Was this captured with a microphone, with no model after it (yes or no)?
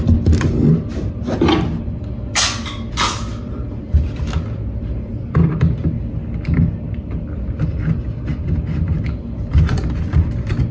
yes